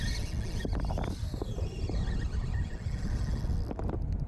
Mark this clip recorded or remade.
recorded